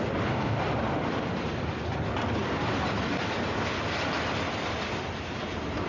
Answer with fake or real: real